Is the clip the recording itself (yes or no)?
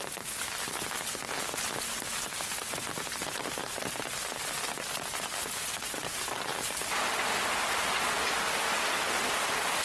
yes